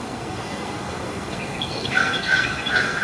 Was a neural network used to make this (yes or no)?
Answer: yes